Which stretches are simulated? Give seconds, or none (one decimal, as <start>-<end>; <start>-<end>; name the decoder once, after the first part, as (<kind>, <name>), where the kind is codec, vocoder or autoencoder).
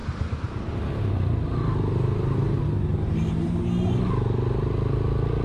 0.0-0.7 (vocoder, BigVGAN v2); 2.9-3.6